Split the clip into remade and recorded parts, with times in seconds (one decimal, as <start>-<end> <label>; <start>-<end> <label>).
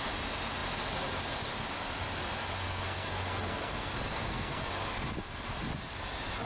0.0-2.5 recorded; 2.5-4.7 remade; 4.7-6.5 recorded